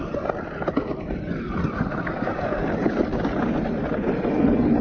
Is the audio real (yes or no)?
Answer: yes